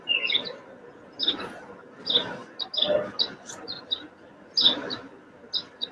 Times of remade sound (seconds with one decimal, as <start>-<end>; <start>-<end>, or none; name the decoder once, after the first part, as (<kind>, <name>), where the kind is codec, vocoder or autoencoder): none